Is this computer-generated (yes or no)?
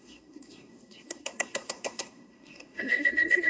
yes